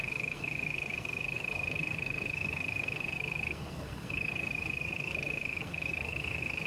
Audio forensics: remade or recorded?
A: remade